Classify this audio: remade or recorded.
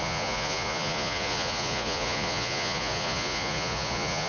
remade